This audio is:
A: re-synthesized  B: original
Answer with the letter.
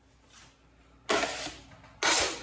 B